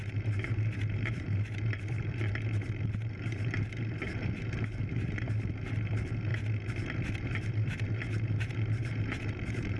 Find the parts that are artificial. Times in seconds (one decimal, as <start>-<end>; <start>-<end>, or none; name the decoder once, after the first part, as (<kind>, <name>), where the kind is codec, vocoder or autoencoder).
0.0-6.3 (vocoder, BigVGAN v2); 7.2-9.8